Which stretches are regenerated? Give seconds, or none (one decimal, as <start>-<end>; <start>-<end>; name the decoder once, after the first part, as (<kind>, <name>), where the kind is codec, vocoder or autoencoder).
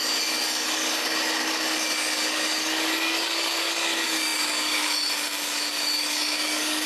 0.0-6.9 (codec, DAC)